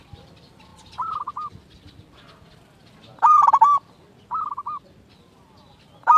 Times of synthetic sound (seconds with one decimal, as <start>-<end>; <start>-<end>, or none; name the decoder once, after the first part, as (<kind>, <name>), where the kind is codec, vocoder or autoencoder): none